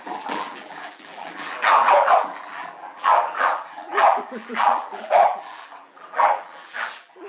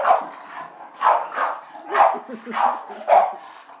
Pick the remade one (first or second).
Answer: first